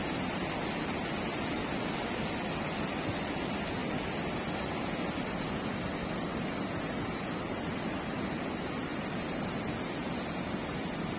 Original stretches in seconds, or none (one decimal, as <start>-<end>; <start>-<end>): 0.0-11.2